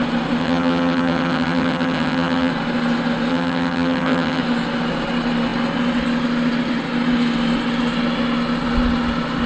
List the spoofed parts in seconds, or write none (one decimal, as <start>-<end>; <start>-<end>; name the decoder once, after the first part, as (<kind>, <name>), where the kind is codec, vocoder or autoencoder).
0.4-2.5 (vocoder, HiFi-GAN); 3.3-4.4

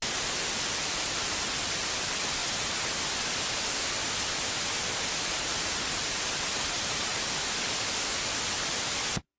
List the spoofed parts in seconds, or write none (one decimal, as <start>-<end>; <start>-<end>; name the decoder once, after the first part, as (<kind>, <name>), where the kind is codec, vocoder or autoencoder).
0.0-2.4 (vocoder, BigVGAN v2); 6.1-9.4

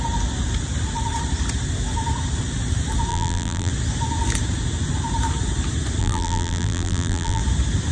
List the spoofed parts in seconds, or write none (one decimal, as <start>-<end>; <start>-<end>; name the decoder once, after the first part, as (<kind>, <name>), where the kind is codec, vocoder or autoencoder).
3.1-3.7 (vocoder, BigVGAN v2); 6.0-7.4

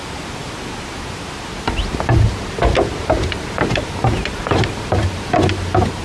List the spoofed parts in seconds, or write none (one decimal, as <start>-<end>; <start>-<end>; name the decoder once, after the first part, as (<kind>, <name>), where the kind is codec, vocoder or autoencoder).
none

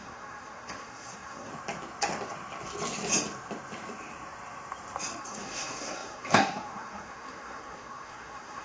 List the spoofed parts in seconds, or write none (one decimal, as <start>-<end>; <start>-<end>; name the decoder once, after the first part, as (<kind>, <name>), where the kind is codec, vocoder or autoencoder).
0.0-1.5 (codec, SNAC); 5.2-8.6